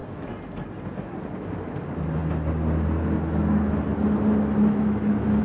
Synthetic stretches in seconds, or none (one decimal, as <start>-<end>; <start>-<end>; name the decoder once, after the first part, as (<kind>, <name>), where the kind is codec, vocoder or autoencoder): none